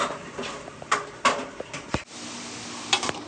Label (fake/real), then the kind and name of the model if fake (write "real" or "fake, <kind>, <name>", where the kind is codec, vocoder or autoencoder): real